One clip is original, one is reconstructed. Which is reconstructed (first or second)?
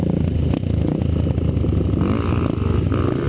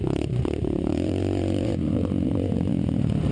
second